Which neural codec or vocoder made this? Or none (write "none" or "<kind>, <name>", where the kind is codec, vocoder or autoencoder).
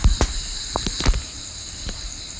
vocoder, BigVGAN v2